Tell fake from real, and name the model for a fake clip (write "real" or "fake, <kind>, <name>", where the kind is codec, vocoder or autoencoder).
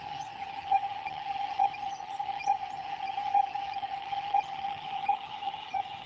fake, vocoder, HiFi-GAN